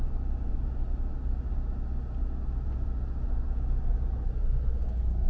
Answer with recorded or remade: recorded